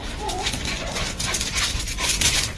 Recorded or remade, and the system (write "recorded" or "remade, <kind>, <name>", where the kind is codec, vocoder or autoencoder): remade, vocoder, Vocos